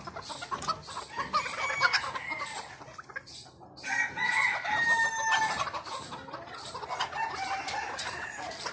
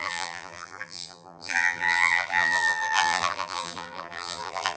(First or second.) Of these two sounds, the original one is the first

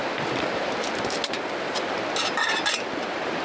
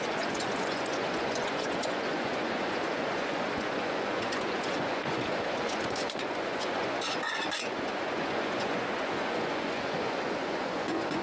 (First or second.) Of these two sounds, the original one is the first